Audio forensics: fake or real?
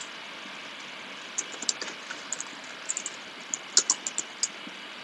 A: real